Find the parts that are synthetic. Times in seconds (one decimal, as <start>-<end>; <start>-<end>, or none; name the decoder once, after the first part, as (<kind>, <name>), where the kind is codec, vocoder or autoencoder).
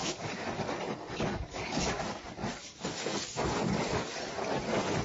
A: 0.0-2.0 (codec, DAC); 2.4-4.2